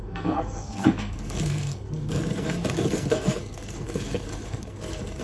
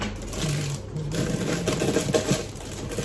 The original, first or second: second